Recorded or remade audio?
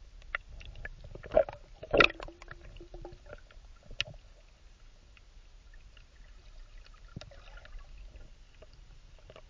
recorded